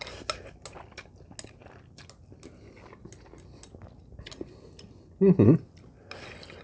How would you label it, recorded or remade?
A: recorded